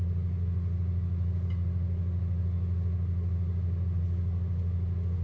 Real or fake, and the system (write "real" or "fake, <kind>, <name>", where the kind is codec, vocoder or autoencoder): real